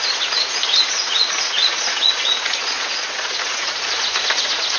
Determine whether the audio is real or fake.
fake